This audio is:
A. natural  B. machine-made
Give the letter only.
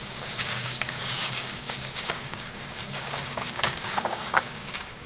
B